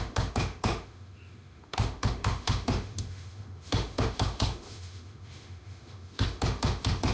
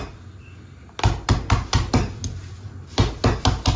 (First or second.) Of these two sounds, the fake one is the first